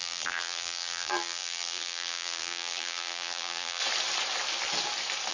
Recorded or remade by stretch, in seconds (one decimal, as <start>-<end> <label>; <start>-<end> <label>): 0.0-3.8 remade; 3.8-5.3 recorded